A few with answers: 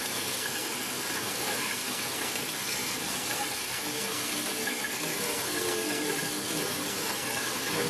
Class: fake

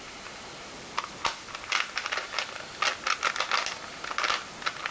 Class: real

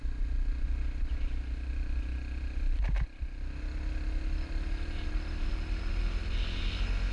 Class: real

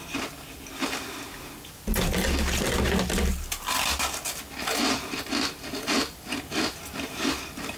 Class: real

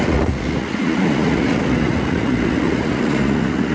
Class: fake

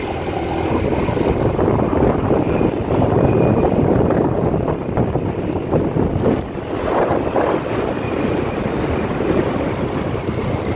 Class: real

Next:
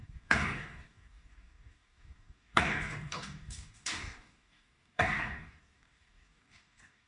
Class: fake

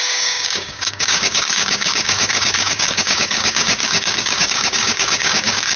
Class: fake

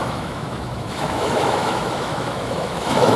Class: fake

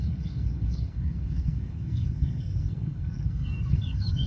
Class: fake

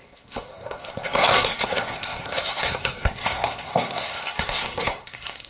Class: fake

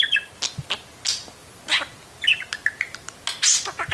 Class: real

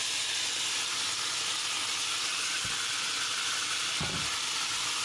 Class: real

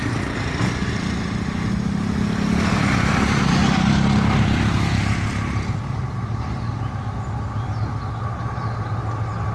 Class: real